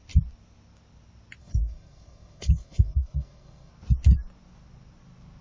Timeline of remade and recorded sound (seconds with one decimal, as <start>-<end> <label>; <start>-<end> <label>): 0.0-1.4 recorded; 1.4-3.7 remade; 3.7-5.4 recorded